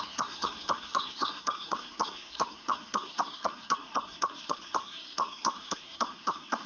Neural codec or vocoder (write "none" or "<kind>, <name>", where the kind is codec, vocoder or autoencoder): codec, SNAC